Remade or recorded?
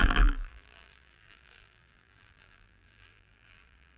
remade